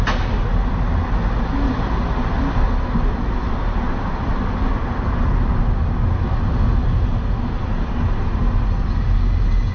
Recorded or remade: recorded